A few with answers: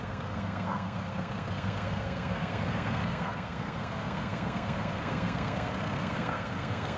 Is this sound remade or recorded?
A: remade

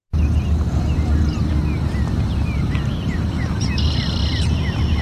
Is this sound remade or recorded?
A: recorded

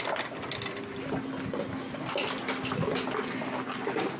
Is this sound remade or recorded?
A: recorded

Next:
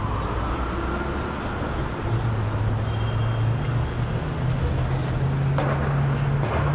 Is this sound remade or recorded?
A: recorded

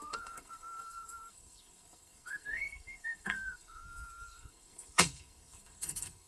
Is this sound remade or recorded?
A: remade